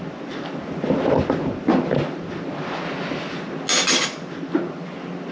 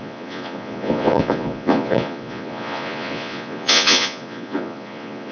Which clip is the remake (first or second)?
second